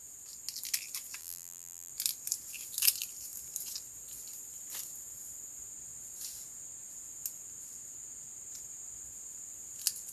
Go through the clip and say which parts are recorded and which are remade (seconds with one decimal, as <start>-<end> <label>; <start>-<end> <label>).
0.0-1.2 recorded; 1.2-1.9 remade; 1.9-10.1 recorded